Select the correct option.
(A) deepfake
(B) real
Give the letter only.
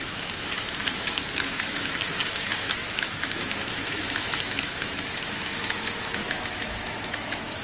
A